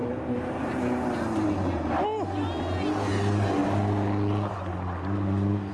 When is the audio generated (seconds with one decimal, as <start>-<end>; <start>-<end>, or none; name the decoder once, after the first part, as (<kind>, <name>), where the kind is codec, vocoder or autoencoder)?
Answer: 0.0-1.9 (vocoder, BigVGAN v2)

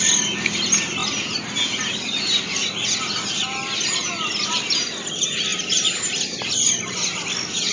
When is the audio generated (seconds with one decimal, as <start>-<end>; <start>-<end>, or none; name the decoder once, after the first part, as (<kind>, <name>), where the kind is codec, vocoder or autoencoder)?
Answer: none

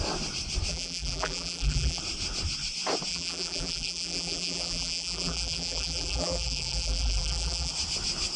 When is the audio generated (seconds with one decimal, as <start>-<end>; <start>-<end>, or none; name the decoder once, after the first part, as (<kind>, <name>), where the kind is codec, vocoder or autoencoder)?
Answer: 0.7-2.0 (vocoder, BigVGAN v2); 3.1-7.7

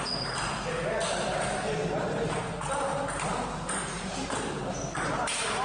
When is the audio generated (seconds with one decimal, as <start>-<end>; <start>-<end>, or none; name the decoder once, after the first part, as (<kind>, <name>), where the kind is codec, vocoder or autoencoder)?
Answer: 1.8-2.4 (vocoder, BigVGAN v2); 2.9-4.6

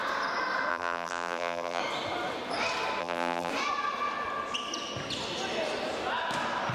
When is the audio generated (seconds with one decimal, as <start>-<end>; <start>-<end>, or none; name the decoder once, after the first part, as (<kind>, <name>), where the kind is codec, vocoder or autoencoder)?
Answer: 0.7-1.8 (vocoder, BigVGAN v2); 3.0-3.5